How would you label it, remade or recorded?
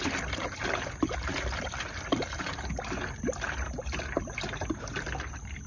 recorded